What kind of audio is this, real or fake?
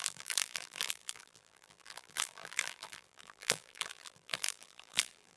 fake